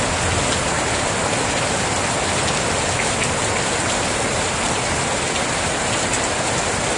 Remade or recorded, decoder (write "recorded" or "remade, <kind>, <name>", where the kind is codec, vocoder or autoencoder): recorded